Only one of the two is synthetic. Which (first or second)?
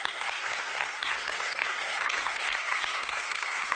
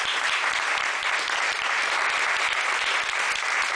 first